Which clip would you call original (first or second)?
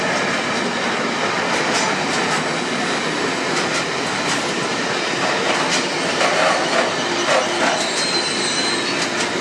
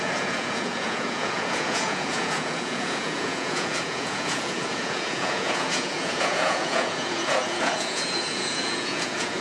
first